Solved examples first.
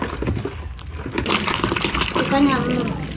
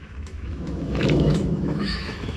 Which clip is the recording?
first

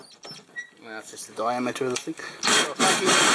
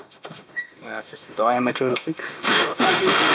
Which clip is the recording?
first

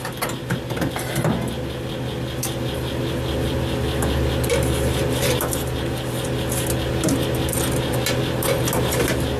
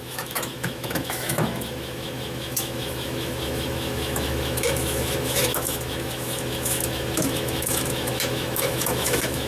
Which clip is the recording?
first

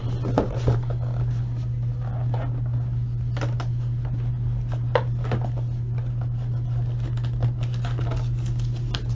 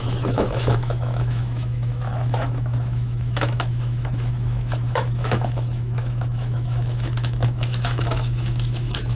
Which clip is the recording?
first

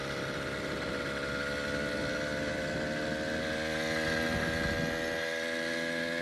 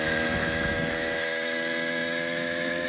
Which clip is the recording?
first